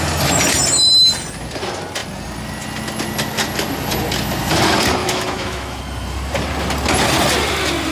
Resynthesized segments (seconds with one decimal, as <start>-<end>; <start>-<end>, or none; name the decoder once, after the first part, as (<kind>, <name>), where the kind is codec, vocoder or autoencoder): 5.0-5.8 (autoencoder, DAC-VAE)

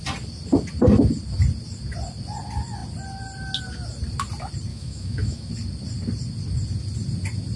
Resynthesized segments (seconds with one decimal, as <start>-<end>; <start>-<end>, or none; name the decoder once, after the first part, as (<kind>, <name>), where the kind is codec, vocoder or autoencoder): 4.7-5.5 (autoencoder, DAC-VAE)

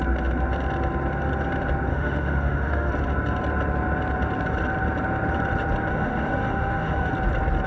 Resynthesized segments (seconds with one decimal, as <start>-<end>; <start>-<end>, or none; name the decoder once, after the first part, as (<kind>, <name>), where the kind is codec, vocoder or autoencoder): 1.9-2.9 (autoencoder, DAC-VAE); 5.9-7.1

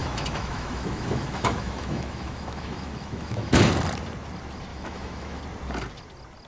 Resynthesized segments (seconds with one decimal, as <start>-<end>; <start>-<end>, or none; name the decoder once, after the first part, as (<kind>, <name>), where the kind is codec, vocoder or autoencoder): 0.0-3.6 (autoencoder, DAC-VAE); 4.7-5.4

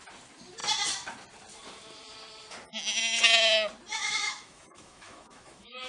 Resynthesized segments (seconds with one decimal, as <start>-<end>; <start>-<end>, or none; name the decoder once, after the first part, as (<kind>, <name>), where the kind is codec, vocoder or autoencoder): 3.9-5.9 (autoencoder, DAC-VAE)

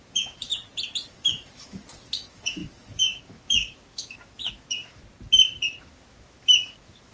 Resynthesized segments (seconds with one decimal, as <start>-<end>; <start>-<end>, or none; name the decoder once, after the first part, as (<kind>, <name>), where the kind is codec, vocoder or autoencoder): 0.0-0.5 (autoencoder, DAC-VAE); 1.1-5.0; 5.8-7.1